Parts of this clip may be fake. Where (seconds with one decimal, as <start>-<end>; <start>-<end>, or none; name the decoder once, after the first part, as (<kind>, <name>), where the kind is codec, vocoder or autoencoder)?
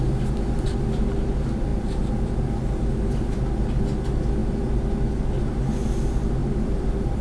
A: 1.7-2.2 (vocoder, BigVGAN v2); 6.4-7.2